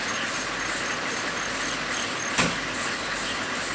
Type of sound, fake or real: real